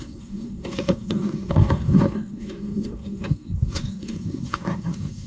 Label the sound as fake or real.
fake